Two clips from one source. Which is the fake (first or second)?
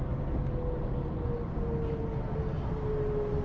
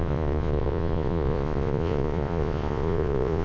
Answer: second